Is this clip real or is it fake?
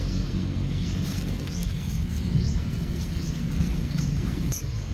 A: fake